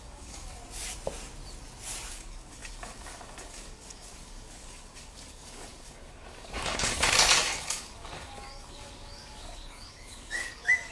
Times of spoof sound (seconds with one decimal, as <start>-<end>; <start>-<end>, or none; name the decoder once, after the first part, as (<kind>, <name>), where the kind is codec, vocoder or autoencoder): 0.0-0.6 (codec, DAC); 2.1-10.9